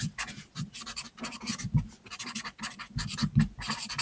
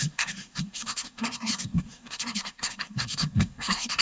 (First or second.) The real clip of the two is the first